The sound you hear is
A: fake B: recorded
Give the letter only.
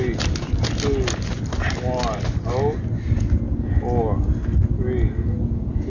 B